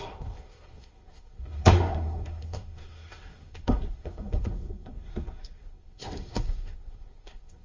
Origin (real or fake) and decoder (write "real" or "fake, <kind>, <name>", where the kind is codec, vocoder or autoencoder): fake, codec, SNAC